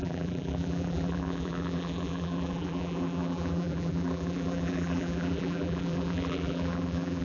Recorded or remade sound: remade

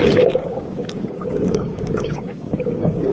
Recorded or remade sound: remade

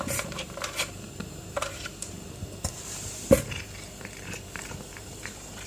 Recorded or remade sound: remade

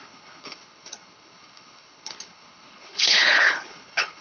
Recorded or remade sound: remade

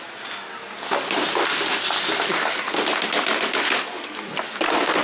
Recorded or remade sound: recorded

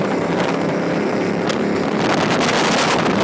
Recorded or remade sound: recorded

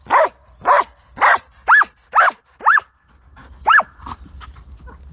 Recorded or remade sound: recorded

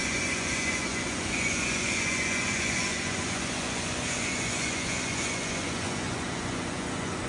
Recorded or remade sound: remade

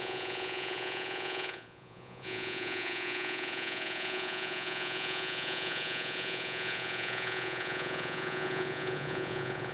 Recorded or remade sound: remade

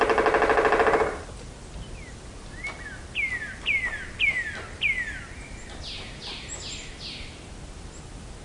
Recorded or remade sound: recorded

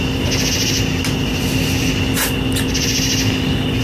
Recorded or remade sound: recorded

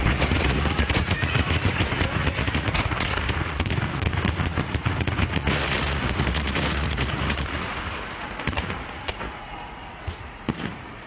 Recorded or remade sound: remade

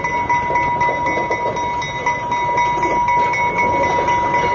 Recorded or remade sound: recorded